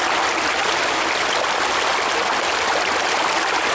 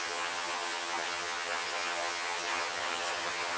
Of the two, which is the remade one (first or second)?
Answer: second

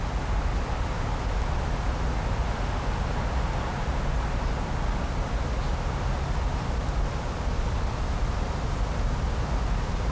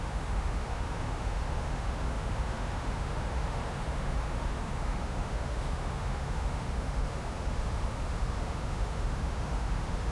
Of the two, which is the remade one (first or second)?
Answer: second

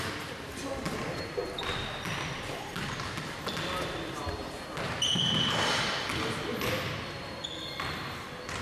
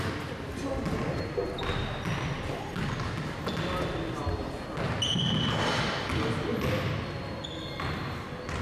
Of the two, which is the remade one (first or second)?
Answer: first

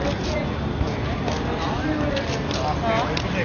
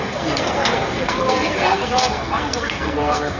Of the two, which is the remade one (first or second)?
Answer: second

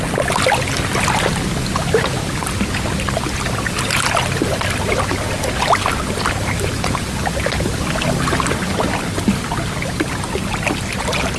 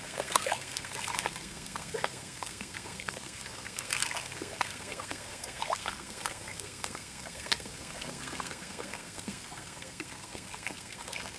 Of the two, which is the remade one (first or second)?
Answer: second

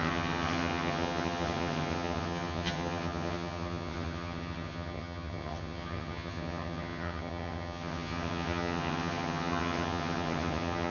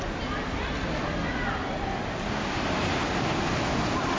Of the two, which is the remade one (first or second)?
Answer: first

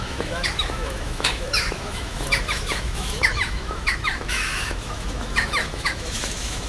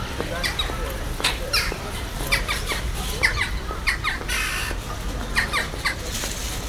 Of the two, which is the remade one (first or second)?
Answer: first